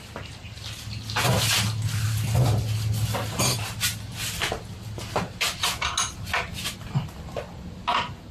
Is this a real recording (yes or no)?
yes